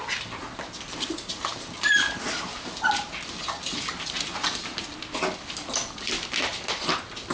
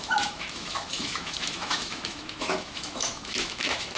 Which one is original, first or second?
first